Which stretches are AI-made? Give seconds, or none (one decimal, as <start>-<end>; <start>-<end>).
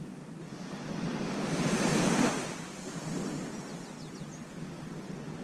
none